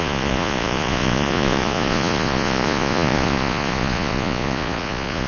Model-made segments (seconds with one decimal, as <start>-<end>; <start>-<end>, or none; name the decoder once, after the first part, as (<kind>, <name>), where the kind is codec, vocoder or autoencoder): 0.0-5.3 (vocoder, Vocos)